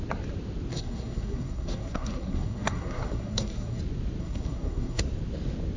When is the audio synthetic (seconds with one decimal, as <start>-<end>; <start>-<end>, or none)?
0.7-3.8; 4.2-5.0